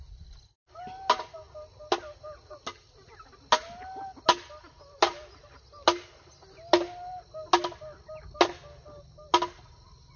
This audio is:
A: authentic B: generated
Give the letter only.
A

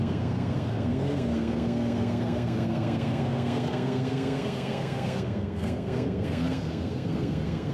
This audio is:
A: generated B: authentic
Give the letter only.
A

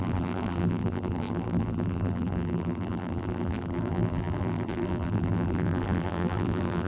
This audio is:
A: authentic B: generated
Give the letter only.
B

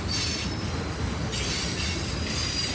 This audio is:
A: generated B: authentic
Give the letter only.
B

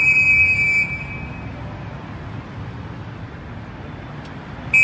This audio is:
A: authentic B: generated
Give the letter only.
A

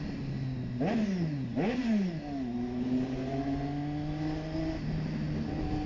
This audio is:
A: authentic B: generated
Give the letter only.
A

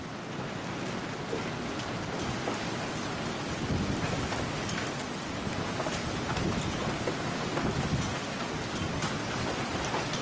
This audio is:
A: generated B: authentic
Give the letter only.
B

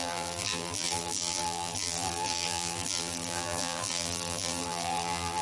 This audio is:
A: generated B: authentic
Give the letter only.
A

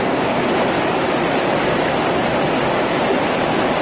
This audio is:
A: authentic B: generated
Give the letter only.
A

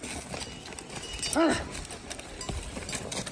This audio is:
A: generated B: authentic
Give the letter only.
B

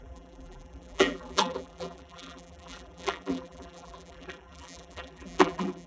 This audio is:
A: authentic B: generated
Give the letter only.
B